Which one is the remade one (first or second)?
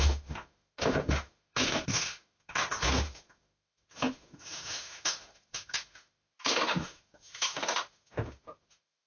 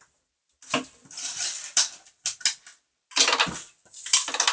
first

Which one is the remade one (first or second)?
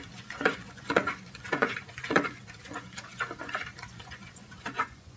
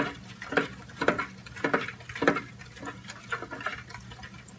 first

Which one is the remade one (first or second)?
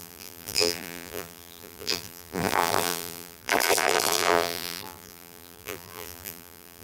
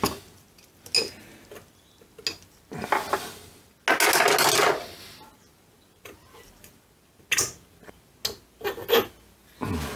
first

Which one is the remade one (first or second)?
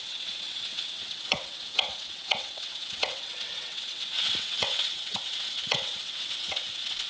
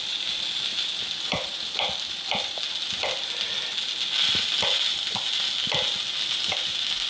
first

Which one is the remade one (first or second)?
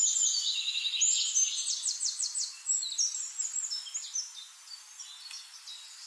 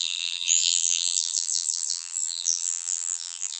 second